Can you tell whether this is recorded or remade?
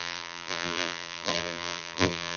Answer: remade